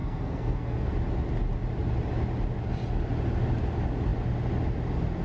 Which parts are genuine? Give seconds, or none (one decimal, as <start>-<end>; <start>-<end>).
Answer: 0.9-5.2